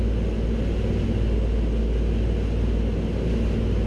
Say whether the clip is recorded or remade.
recorded